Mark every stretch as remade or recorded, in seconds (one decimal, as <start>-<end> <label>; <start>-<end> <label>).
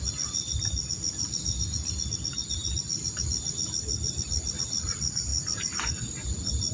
0.0-6.7 recorded